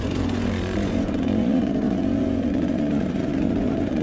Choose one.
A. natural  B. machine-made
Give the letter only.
B